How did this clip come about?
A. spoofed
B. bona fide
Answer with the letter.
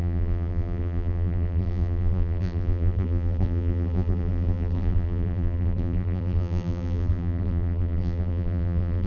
A